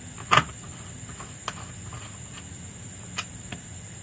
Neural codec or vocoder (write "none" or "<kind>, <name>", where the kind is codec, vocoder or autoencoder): none